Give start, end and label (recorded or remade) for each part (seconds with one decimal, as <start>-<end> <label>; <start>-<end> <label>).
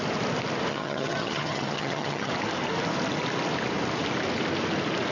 0.0-0.7 recorded; 0.7-2.3 remade; 2.3-5.1 recorded